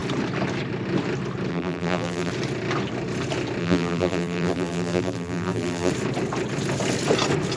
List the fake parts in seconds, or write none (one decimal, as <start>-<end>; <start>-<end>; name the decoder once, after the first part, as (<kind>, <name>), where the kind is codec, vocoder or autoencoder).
1.5-2.3 (vocoder, BigVGAN v2); 3.6-5.9